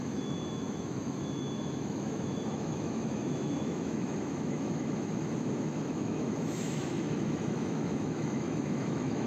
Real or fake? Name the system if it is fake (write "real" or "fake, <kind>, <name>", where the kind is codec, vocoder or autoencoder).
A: fake, autoencoder, DAC-VAE